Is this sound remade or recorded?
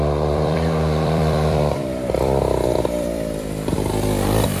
remade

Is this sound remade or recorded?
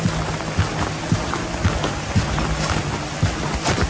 recorded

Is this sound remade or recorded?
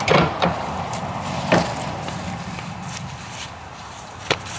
remade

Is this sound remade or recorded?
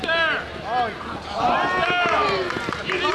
recorded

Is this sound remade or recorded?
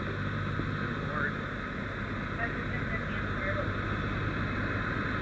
recorded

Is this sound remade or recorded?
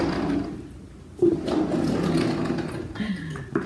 recorded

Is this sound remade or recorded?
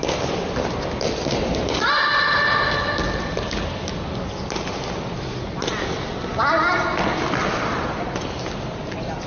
recorded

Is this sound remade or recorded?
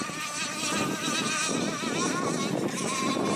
recorded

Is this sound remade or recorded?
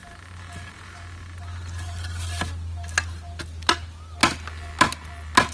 recorded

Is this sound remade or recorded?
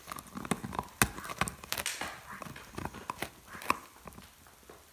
recorded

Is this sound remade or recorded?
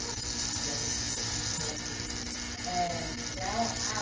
recorded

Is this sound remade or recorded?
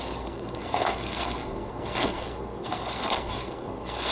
remade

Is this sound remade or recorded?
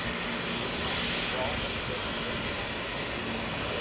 recorded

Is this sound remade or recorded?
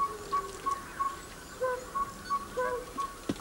recorded